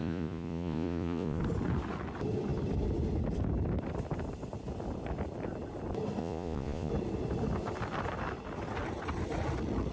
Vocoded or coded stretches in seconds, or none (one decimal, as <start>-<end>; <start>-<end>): 0.0-1.4; 6.2-6.9